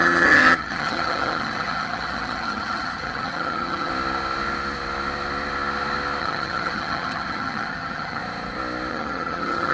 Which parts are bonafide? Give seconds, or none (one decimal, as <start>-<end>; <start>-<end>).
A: 3.9-6.2; 8.2-8.9